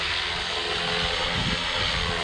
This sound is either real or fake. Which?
real